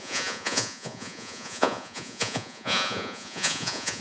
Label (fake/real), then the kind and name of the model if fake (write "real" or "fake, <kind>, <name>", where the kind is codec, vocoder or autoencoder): fake, vocoder, Vocos